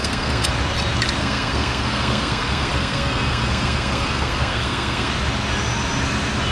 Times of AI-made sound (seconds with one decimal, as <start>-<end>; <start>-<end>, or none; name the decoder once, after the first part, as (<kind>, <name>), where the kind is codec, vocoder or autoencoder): 0.0-0.5 (codec, SNAC); 1.2-5.1